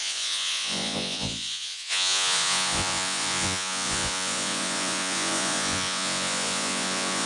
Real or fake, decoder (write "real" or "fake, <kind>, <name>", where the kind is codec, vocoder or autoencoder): fake, vocoder, Vocos